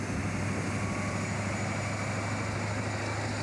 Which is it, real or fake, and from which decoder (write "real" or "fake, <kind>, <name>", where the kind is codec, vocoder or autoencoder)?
real